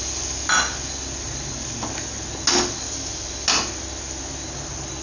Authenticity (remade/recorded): recorded